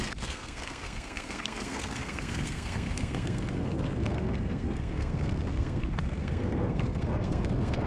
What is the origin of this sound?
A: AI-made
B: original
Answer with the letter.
A